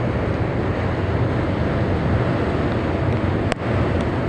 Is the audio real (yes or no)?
yes